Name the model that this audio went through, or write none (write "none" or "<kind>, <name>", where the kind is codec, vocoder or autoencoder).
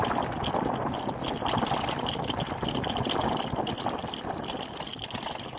none